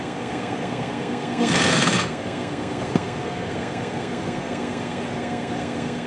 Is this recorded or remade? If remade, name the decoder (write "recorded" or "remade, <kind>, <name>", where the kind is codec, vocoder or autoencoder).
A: remade, codec, SNAC